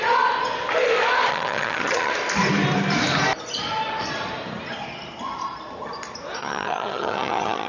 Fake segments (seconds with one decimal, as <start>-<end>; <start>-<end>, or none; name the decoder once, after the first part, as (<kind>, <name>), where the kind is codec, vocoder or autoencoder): 1.3-2.1 (vocoder, HiFi-GAN); 6.4-7.7